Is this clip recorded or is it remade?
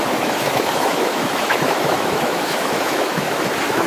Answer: remade